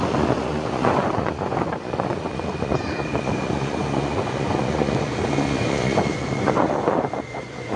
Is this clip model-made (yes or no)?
yes